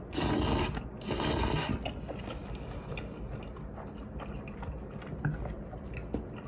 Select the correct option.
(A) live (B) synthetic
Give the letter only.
A